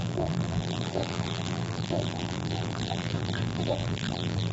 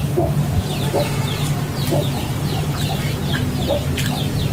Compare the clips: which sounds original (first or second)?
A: second